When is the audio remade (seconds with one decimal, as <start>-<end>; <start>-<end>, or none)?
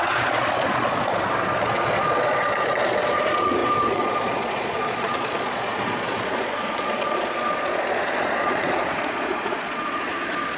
0.0-1.1; 1.6-10.6